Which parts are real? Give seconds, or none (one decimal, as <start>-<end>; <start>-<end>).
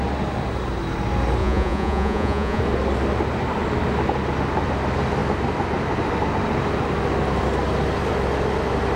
0.0-1.4; 2.6-9.0